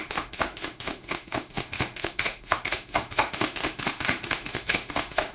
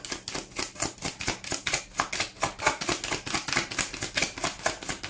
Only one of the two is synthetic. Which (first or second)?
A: first